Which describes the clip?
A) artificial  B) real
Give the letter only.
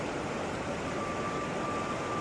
B